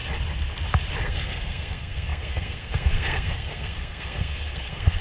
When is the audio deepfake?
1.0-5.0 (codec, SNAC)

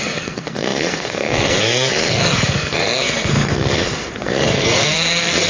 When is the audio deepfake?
0.0-5.5 (codec, SNAC)

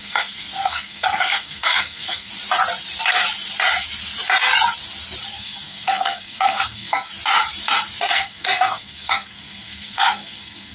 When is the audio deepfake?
0.0-2.3 (codec, SNAC); 5.3-7.1; 8.0-10.7

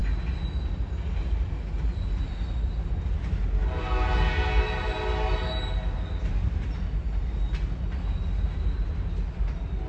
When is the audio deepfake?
none

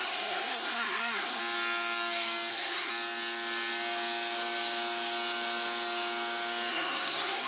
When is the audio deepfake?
0.0-1.4 (codec, SNAC); 2.5-2.9; 6.7-7.5

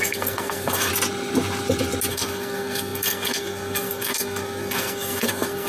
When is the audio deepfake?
0.0-0.9 (codec, SNAC); 2.1-5.7